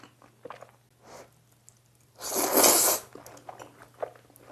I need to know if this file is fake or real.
real